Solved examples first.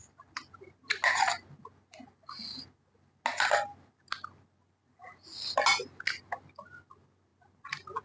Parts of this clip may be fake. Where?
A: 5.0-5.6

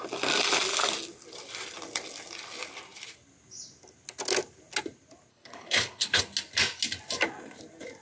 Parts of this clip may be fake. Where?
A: 5.3-6.2

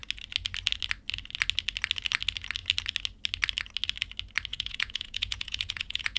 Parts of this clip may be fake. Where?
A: 4.5-6.2